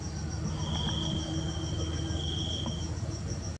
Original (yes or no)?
yes